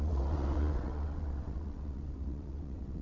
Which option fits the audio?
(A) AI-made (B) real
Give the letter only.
A